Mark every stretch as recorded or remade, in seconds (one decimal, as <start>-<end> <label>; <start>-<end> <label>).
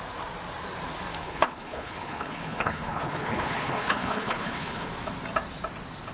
0.0-1.2 recorded; 1.2-4.9 remade; 4.9-6.1 recorded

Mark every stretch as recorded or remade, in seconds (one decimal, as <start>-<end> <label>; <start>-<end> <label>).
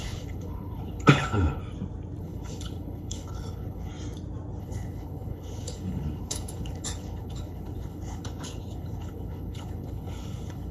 0.0-1.6 remade; 1.6-2.2 recorded; 2.2-3.9 remade; 3.9-4.6 recorded; 4.6-10.7 remade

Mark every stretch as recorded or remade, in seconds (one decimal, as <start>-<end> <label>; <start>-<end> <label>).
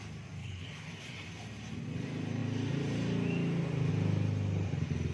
0.0-0.4 recorded; 0.4-0.9 remade; 0.9-5.1 recorded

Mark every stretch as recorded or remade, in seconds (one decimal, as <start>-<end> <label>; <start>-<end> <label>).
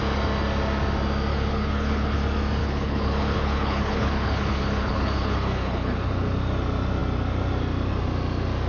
0.0-1.3 recorded; 1.3-2.2 remade; 2.2-2.6 recorded; 2.6-6.1 remade; 6.1-8.7 recorded